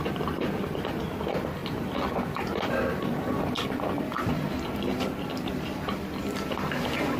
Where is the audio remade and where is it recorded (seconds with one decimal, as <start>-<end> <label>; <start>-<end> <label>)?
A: 0.0-7.2 recorded

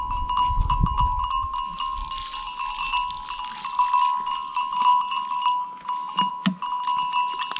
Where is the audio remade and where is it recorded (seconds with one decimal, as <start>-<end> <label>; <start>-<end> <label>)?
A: 0.0-7.6 recorded

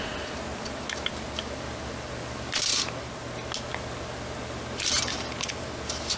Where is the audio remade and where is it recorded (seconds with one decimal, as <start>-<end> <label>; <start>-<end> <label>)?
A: 0.0-6.2 recorded